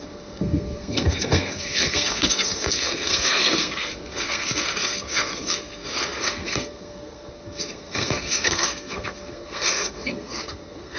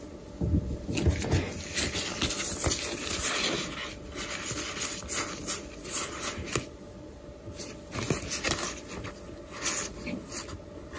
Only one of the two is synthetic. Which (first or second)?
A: first